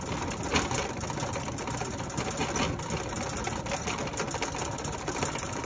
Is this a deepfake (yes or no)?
no